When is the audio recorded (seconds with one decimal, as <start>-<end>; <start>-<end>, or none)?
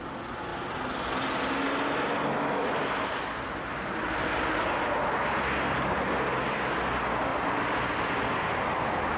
0.0-9.2